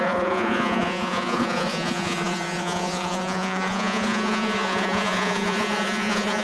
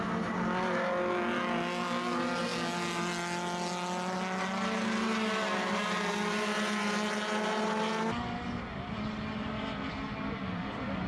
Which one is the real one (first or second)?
second